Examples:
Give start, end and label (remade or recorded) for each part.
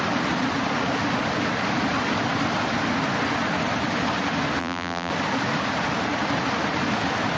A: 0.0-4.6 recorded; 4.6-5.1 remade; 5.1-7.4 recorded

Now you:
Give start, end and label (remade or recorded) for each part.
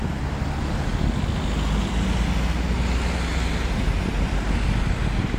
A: 0.0-3.3 recorded; 3.3-4.1 remade; 4.1-5.4 recorded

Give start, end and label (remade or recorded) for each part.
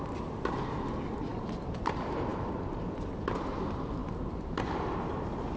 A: 0.0-1.3 recorded; 1.3-1.8 remade; 1.8-4.0 recorded; 4.0-4.9 remade; 4.9-5.6 recorded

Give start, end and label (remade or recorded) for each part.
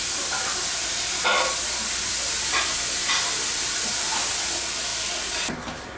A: 0.0-0.8 remade; 0.8-4.1 recorded; 4.1-6.0 remade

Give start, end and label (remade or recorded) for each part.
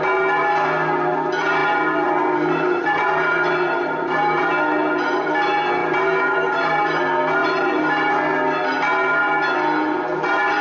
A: 0.0-1.6 recorded; 1.6-4.5 remade; 4.5-5.8 recorded; 5.8-7.0 remade; 7.0-7.4 recorded; 7.4-8.1 remade; 8.1-10.6 recorded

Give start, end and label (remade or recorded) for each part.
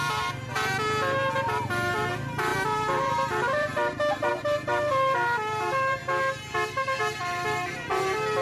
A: 0.0-6.0 remade; 6.0-7.0 recorded; 7.0-8.4 remade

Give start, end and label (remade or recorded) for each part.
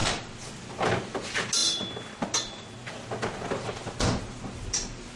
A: 0.0-5.2 recorded